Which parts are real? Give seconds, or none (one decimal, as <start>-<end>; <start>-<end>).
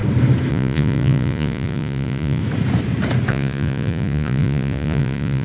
0.0-0.5; 2.4-3.3